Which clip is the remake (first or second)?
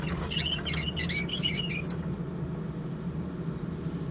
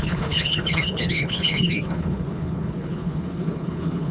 second